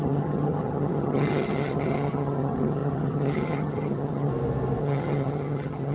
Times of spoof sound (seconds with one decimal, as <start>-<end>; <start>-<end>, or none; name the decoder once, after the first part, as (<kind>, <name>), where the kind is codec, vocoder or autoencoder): 0.0-4.3 (vocoder, HiFi-GAN); 4.8-5.9